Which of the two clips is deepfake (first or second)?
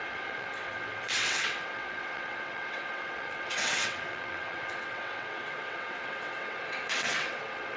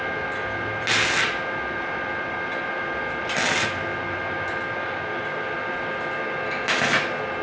first